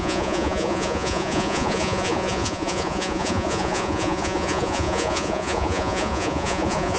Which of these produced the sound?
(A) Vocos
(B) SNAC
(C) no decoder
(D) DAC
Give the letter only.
A